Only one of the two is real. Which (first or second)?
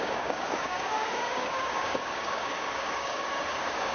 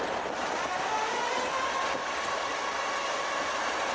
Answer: second